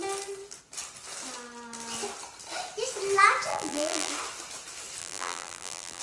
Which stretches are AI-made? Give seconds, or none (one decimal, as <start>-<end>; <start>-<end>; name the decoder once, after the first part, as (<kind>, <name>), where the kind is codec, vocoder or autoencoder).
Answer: 3.5-4.1 (vocoder, BigVGAN v2); 5.0-6.0